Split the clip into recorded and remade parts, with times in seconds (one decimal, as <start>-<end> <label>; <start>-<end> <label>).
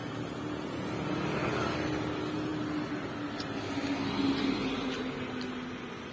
0.0-6.1 recorded